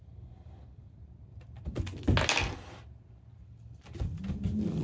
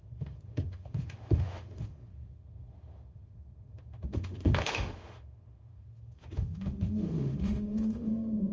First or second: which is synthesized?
second